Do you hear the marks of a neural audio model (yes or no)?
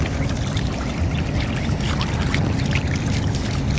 no